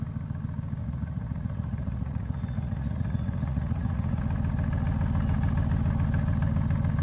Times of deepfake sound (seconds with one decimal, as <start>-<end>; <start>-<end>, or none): 0.8-4.2